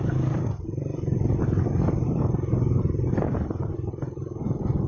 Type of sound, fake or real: fake